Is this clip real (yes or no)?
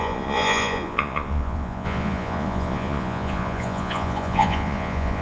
no